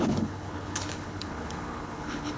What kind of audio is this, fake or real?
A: fake